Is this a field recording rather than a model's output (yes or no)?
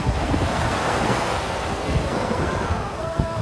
no